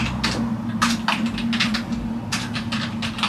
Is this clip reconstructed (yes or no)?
no